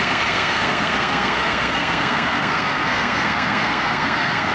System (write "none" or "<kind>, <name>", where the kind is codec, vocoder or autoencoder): codec, SNAC